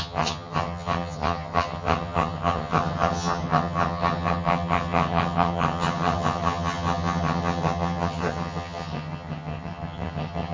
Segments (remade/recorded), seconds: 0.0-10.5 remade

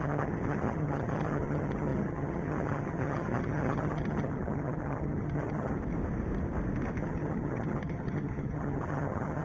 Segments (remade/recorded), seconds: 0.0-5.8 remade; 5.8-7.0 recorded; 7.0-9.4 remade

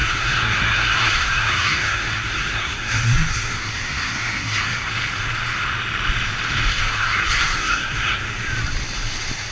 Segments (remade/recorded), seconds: 0.0-4.9 remade; 4.9-6.7 recorded; 6.7-8.2 remade; 8.2-9.5 recorded